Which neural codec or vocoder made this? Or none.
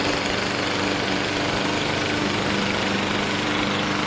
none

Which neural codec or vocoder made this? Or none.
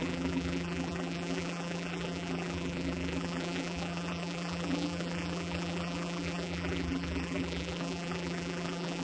vocoder, BigVGAN v2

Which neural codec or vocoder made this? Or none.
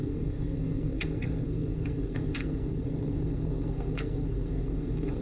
codec, SNAC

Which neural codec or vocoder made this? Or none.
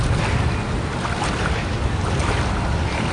none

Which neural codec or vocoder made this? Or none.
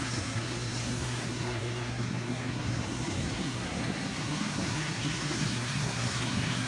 codec, SNAC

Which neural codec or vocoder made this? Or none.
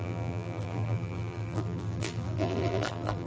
vocoder, BigVGAN v2